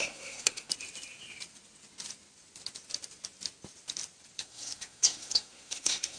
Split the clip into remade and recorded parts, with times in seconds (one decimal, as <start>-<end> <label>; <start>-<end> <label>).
0.0-0.7 remade; 0.7-4.4 recorded; 4.4-6.2 remade